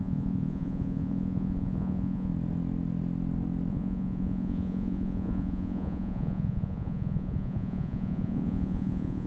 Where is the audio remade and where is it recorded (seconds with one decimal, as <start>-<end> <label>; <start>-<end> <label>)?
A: 0.0-2.3 remade; 2.3-3.7 recorded; 3.7-9.3 remade